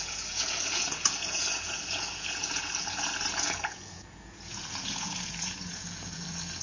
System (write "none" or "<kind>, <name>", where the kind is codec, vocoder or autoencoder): vocoder, Vocos